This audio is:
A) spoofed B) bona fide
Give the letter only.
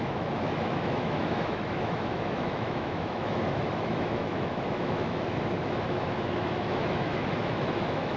A